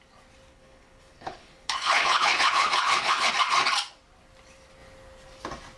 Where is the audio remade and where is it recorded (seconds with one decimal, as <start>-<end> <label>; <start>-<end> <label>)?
0.0-0.5 recorded; 0.5-3.3 remade; 3.3-5.8 recorded